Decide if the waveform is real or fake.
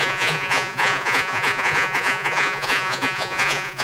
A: fake